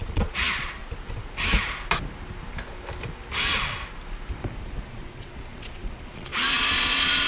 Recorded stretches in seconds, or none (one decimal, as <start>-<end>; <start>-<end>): 0.8-4.6